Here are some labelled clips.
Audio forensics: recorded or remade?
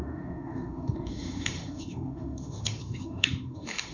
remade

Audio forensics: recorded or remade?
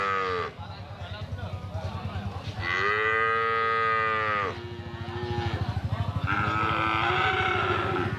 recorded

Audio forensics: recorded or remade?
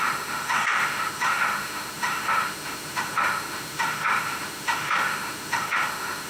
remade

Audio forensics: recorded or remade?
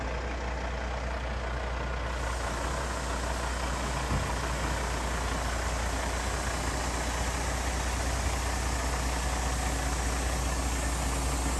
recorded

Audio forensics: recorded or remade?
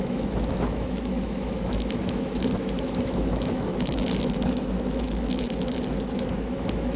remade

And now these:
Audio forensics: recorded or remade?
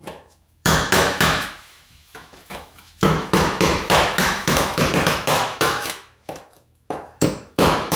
remade